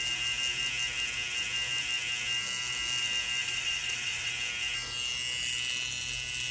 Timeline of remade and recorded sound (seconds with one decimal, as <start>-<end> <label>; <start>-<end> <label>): 0.0-3.4 recorded; 3.4-4.3 remade; 4.3-6.5 recorded